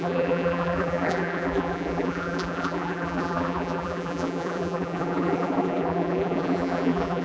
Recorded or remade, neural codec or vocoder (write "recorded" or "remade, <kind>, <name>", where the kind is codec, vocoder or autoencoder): remade, vocoder, BigVGAN v2